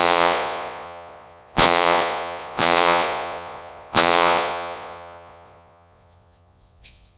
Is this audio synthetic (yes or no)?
yes